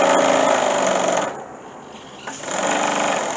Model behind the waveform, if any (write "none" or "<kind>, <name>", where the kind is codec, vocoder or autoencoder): none